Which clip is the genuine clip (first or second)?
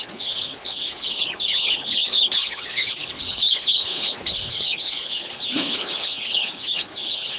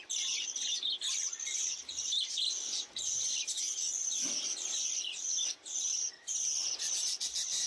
second